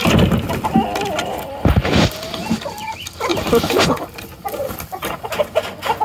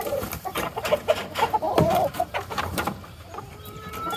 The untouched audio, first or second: first